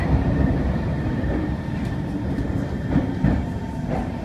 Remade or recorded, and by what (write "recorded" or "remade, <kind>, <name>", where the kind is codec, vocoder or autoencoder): remade, vocoder, BigVGAN v2